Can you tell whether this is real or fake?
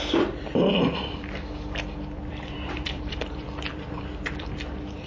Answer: fake